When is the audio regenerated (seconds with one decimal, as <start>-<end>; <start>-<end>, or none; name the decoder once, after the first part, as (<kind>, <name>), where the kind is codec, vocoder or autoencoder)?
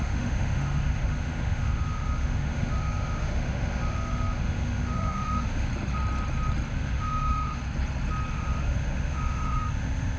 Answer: 0.0-5.7 (autoencoder, DAC-VAE); 6.7-7.6; 8.3-10.2